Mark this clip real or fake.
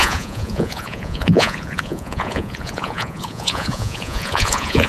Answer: fake